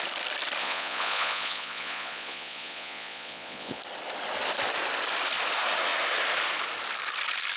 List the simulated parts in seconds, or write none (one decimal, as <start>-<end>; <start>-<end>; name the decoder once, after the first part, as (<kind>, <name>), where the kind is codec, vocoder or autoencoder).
0.6-3.8 (vocoder, Vocos)